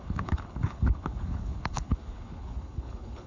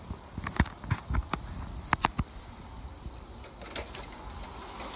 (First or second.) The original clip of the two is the second